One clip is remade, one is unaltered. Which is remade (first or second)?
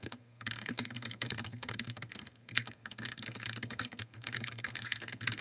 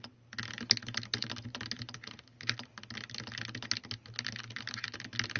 first